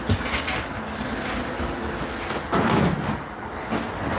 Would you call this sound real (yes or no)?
yes